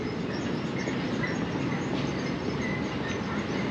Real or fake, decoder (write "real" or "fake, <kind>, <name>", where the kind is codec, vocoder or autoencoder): real